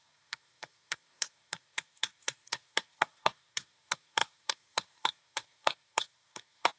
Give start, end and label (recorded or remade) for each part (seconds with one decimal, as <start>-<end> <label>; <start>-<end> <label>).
0.0-6.8 remade